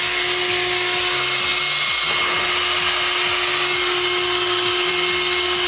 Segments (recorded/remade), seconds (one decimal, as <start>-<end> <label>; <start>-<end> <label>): 0.0-5.7 recorded